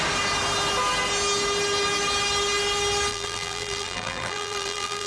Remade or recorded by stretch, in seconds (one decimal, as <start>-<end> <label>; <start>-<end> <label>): 0.0-3.1 recorded; 3.1-5.1 remade